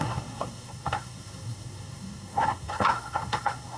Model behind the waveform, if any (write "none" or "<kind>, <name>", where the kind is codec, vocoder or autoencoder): codec, SNAC